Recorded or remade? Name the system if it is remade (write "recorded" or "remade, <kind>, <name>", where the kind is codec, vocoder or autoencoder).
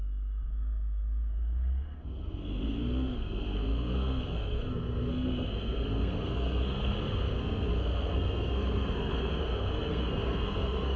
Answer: remade, codec, SNAC